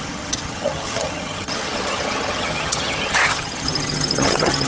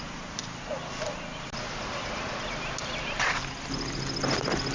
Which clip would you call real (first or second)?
second